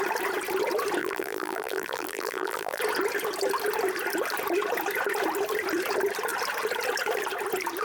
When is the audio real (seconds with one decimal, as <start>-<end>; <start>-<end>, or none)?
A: 0.0-1.0; 2.8-7.8